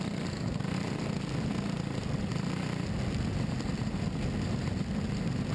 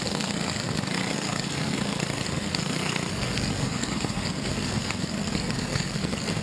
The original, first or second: first